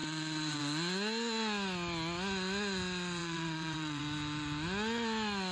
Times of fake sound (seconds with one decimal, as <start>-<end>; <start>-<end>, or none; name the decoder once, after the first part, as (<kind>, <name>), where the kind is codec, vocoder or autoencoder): 0.0-0.6 (vocoder, WaveNeXt); 3.2-4.0